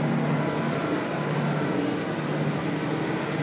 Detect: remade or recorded recorded